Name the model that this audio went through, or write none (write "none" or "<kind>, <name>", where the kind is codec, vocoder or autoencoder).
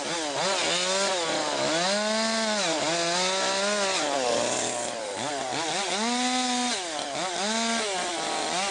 none